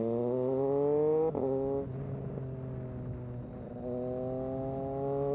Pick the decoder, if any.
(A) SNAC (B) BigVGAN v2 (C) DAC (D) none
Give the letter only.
D